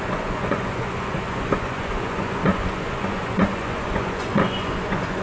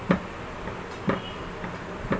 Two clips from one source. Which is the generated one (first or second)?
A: first